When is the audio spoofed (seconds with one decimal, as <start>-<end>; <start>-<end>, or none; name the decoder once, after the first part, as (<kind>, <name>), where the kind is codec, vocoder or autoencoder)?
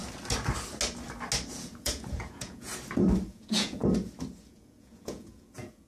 1.5-2.7 (vocoder, Vocos); 3.3-3.8; 4.4-5.9